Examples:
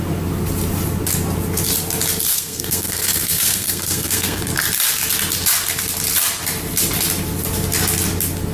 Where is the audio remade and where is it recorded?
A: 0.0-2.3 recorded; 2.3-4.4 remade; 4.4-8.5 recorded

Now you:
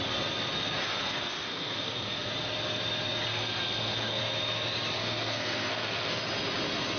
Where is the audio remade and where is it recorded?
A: 0.0-1.0 recorded; 1.0-2.3 remade; 2.3-3.3 recorded; 3.3-4.2 remade; 4.2-5.0 recorded; 5.0-6.2 remade; 6.2-7.0 recorded

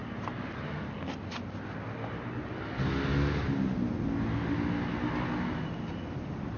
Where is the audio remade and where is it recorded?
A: 0.0-6.6 recorded

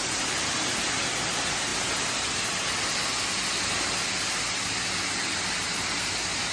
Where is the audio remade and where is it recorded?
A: 0.0-6.5 recorded

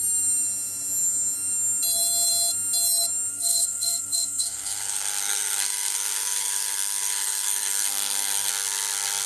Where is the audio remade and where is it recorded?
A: 0.0-3.3 recorded; 3.3-8.5 remade; 8.5-9.3 recorded

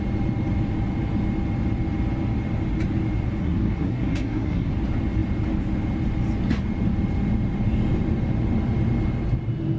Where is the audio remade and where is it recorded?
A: 0.0-3.4 recorded; 3.4-4.7 remade; 4.7-9.8 recorded

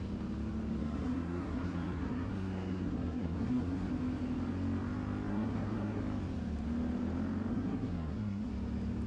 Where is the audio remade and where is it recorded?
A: 0.0-0.8 recorded; 0.8-3.9 remade; 3.9-5.3 recorded; 5.3-6.0 remade; 6.0-7.5 recorded; 7.5-8.5 remade; 8.5-9.1 recorded